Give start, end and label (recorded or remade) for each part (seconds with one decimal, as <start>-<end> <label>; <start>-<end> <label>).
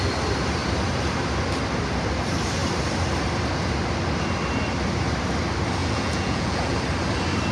0.0-5.8 recorded; 5.8-6.8 remade; 6.8-7.5 recorded